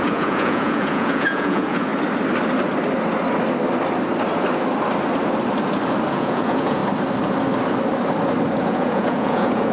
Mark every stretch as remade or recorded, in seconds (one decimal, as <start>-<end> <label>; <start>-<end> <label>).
0.0-1.9 remade; 1.9-6.1 recorded; 6.1-6.8 remade; 6.8-8.6 recorded; 8.6-9.7 remade